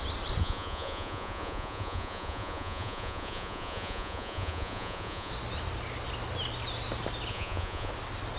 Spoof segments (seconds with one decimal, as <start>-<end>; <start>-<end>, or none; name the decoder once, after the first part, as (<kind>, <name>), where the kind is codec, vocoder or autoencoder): 0.4-5.3 (vocoder, Vocos); 7.3-7.9